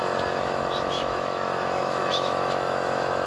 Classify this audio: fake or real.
fake